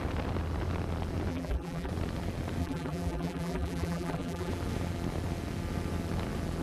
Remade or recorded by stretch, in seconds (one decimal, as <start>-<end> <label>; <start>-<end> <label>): 0.0-1.3 recorded; 1.3-1.9 remade; 1.9-2.6 recorded; 2.6-4.5 remade; 4.5-6.6 recorded